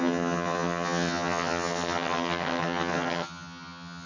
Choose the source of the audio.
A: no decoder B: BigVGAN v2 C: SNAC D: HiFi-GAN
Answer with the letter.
D